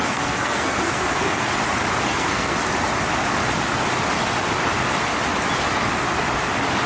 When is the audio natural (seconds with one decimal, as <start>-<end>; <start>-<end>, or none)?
1.5-2.1; 2.6-6.9

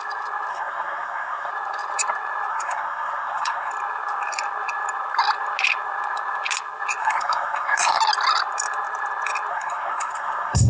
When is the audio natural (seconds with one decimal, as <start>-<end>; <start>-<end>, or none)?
0.0-0.5; 1.5-2.5; 3.7-7.0; 8.0-9.5

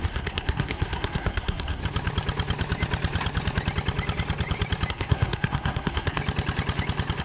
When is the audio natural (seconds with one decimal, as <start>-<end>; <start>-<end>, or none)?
1.8-4.9; 6.2-7.2

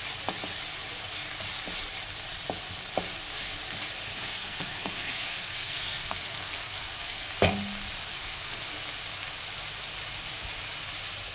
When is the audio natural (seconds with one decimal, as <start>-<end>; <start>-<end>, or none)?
0.0-4.1; 7.3-8.1; 8.6-11.3

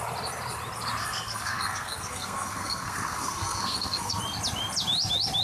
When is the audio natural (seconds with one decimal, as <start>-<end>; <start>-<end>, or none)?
0.0-1.0; 4.2-5.4

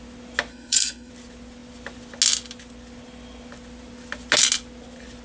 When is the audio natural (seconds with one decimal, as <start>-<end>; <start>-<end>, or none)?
0.0-0.5; 1.1-5.2

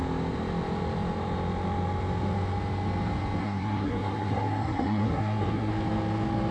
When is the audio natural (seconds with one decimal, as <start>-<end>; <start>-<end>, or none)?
0.0-3.4; 5.7-6.5

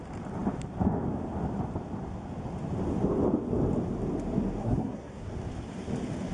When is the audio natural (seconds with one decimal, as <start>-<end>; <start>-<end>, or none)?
0.0-4.6; 5.3-6.3